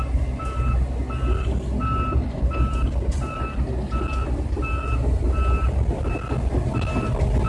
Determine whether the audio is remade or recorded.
recorded